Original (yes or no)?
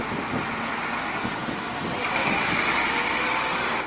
yes